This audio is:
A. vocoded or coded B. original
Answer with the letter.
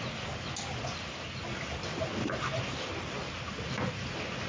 B